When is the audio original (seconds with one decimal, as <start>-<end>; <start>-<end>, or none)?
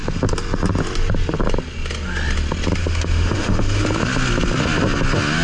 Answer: 0.0-2.8; 3.8-5.4